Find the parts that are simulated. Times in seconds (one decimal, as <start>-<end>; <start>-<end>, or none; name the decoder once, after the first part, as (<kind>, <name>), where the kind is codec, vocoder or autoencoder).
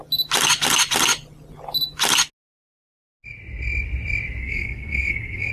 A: 4.4-5.5 (codec, SNAC)